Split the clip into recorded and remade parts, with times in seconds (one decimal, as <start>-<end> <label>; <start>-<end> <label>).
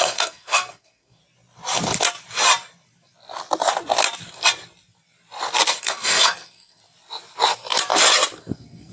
0.0-1.2 remade; 1.2-5.8 recorded; 5.8-6.8 remade; 6.8-8.4 recorded; 8.4-8.9 remade